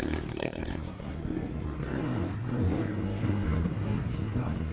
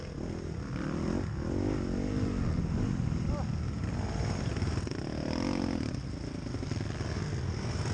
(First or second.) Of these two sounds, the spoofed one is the first